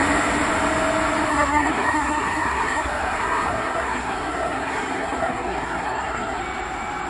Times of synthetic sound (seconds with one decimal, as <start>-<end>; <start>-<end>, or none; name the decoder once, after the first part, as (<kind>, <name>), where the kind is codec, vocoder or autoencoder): 1.3-6.4 (codec, SNAC)